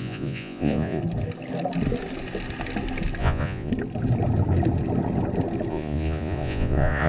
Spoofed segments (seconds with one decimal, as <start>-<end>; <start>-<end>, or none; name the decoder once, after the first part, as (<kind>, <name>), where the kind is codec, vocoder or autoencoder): 0.0-1.0 (vocoder, Vocos); 3.2-3.7; 5.7-7.1

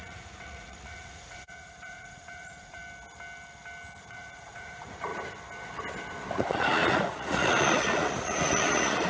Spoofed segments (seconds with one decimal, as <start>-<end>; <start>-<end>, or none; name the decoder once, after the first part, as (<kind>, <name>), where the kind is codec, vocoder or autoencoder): 0.0-2.8 (vocoder, Vocos); 4.0-5.1; 6.3-9.1

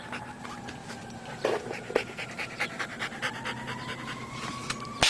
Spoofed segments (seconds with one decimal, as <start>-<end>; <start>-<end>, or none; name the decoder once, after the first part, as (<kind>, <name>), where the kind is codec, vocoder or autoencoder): 0.8-2.8 (vocoder, BigVGAN v2); 4.2-5.1

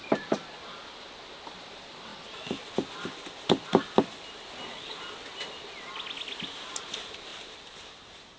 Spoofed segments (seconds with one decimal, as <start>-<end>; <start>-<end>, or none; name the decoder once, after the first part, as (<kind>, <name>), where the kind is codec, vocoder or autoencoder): 7.3-8.4 (vocoder, BigVGAN v2)

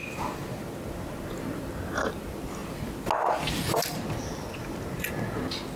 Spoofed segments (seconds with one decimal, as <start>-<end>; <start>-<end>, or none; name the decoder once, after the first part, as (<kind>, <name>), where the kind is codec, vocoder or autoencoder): none

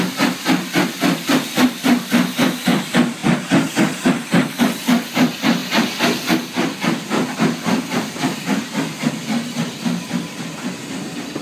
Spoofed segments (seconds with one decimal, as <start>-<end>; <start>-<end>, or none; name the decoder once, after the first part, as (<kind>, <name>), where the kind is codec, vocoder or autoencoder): none

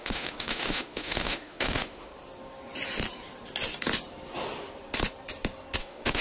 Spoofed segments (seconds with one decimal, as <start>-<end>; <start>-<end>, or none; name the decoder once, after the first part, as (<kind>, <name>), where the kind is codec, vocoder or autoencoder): 0.0-2.1 (autoencoder, DAC-VAE); 5.8-6.2

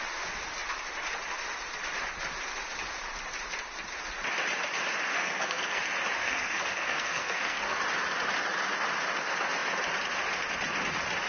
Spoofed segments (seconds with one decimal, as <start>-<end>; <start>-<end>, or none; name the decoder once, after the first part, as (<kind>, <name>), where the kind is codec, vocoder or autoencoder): 5.1-5.8 (codec, SNAC); 6.2-7.8